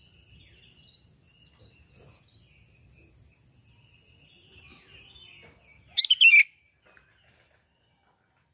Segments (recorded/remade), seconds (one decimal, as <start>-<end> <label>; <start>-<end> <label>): 0.0-8.5 recorded